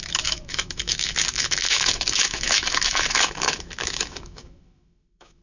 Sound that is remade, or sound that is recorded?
remade